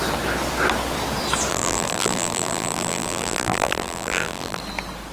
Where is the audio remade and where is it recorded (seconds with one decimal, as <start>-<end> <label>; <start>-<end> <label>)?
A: 0.0-1.5 recorded; 1.5-4.6 remade; 4.6-5.1 recorded